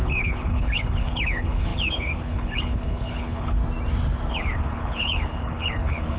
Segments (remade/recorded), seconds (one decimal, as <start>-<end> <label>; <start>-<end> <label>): 0.0-3.6 remade; 3.6-4.3 recorded; 4.3-6.2 remade